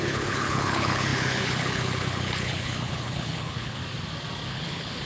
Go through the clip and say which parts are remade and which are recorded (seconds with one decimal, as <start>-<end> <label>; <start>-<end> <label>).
0.0-3.8 remade; 3.8-4.5 recorded; 4.5-5.1 remade